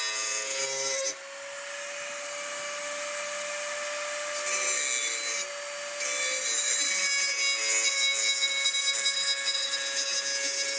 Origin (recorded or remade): recorded